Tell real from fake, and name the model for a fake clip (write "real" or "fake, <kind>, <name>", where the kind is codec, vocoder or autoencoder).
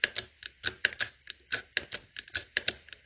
real